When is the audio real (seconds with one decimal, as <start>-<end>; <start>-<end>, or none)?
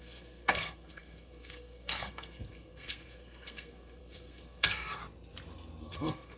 5.0-5.8